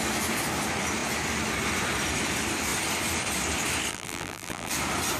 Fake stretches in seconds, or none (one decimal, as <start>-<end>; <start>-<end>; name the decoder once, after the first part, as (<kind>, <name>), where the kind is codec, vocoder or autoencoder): 3.9-4.7 (vocoder, BigVGAN v2)

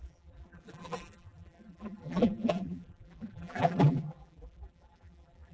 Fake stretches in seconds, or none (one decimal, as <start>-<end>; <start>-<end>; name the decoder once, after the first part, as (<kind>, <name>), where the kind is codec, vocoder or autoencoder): 0.0-5.5 (vocoder, BigVGAN v2)

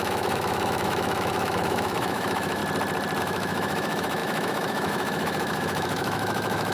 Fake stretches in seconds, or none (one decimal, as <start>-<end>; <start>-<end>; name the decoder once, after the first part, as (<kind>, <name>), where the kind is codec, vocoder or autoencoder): 0.0-2.6 (autoencoder, DAC-VAE); 3.2-6.7